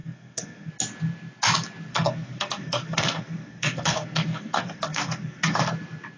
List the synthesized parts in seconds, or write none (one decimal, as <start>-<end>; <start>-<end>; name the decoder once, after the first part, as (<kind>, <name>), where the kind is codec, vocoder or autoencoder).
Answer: 0.0-0.7 (codec, SNAC); 1.9-5.6